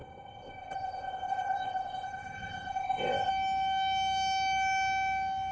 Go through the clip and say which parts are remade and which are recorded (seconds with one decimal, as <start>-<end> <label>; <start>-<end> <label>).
0.0-3.3 remade; 3.3-5.5 recorded